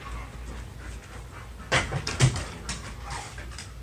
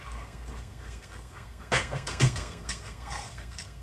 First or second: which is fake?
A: second